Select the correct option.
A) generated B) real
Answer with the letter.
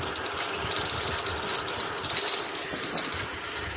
B